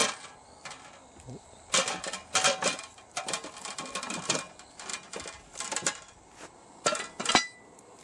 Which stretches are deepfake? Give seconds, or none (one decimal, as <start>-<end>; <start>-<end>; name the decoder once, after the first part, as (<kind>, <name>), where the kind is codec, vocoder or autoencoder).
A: none